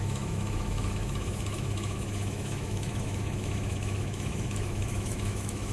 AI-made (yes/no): yes